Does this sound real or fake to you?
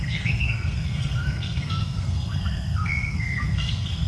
fake